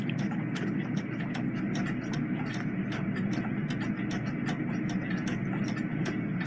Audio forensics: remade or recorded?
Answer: recorded